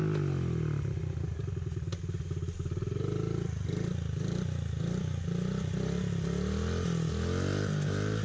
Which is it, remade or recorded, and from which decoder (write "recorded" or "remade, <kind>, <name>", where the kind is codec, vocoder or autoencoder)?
recorded